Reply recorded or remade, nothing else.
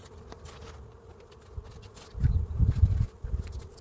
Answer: recorded